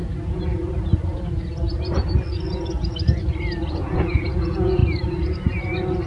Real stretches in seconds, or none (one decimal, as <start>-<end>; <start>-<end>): 0.0-3.7; 4.8-6.1